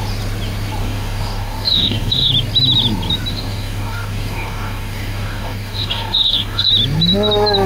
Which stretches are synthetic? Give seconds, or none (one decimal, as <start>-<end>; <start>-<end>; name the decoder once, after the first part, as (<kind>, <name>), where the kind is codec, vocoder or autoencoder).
0.8-2.3 (codec, DAC); 3.3-6.7